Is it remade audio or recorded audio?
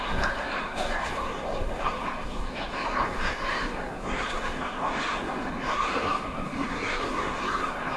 remade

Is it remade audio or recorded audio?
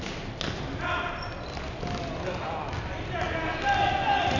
recorded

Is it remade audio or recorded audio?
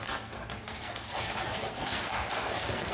remade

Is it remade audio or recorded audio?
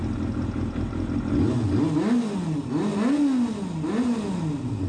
recorded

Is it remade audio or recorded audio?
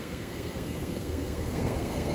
remade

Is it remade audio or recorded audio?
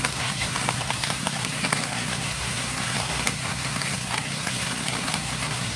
remade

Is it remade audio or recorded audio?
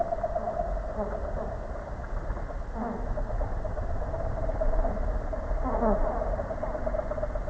recorded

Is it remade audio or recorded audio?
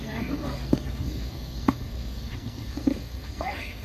remade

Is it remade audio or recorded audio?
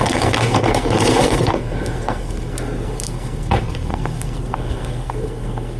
remade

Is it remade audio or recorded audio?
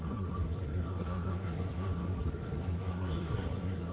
remade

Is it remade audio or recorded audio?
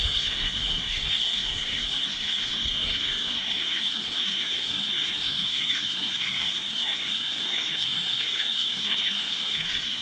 remade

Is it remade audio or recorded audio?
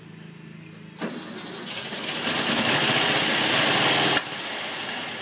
recorded